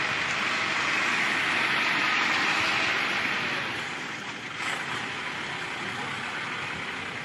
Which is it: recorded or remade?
recorded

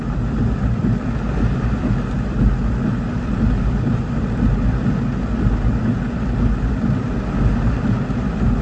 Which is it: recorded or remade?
recorded